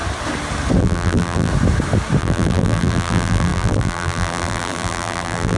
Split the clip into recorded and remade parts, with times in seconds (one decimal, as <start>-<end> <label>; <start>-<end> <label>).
0.0-0.8 recorded; 0.8-1.5 remade; 1.5-2.2 recorded; 2.2-5.6 remade